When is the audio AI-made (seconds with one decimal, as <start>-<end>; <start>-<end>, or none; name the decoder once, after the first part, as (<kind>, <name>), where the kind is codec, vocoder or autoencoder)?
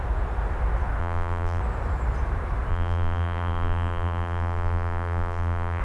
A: 1.0-1.6 (vocoder, BigVGAN v2); 2.7-5.8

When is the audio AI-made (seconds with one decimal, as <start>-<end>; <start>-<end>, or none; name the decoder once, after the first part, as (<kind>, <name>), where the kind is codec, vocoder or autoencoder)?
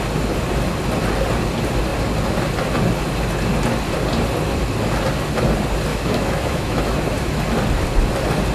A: 5.9-6.8 (autoencoder, DAC-VAE)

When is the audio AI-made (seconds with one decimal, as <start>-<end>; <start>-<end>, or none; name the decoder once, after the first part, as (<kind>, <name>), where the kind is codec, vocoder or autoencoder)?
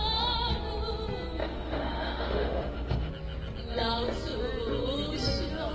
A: 1.4-3.1 (autoencoder, DAC-VAE)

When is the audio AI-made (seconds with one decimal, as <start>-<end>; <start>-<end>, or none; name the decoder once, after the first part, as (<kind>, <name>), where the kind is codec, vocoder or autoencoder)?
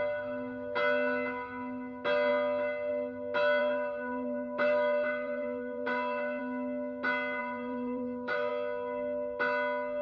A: 3.6-6.4 (vocoder, BigVGAN v2); 7.4-8.5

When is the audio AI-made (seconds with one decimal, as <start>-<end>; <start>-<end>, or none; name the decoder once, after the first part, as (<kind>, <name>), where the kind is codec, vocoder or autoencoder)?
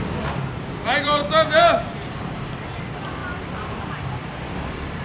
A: 0.0-1.2 (vocoder, BigVGAN v2); 1.8-5.0